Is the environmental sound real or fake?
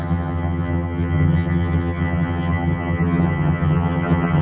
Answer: fake